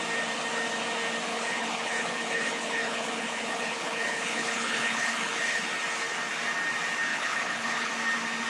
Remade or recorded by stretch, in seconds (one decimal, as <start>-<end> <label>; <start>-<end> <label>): 0.0-1.3 recorded; 1.3-5.6 remade; 5.6-7.1 recorded; 7.1-7.9 remade; 7.9-8.5 recorded